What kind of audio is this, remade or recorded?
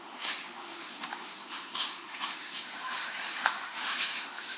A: remade